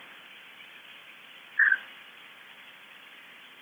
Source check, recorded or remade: recorded